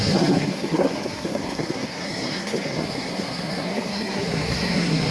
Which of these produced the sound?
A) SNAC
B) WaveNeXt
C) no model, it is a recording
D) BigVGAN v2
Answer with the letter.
A